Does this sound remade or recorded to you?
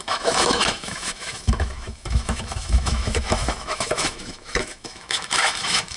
remade